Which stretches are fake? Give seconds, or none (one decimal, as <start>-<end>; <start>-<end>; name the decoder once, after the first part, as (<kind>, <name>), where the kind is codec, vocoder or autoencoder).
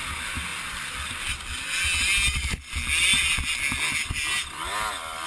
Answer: none